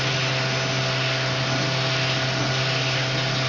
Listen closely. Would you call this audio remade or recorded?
recorded